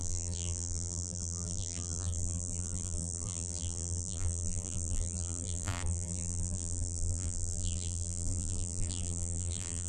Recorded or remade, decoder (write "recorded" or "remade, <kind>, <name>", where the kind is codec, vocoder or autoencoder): remade, vocoder, BigVGAN v2